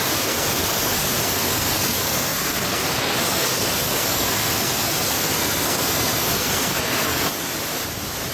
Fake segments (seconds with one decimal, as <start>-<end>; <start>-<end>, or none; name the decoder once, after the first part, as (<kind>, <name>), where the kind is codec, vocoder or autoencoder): 0.0-7.5 (codec, SNAC)